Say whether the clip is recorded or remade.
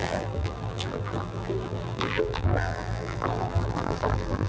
remade